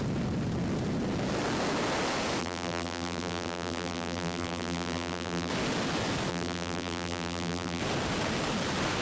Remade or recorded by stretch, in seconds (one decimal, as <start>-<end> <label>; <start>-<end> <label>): 0.0-2.4 recorded; 2.4-5.5 remade; 5.5-6.3 recorded; 6.3-7.8 remade; 7.8-9.0 recorded